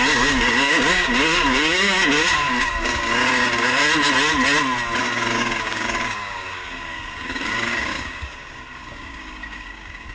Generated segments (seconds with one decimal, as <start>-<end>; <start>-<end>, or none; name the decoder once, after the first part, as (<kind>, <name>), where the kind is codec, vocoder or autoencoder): 0.0-3.8 (codec, DAC); 5.0-10.1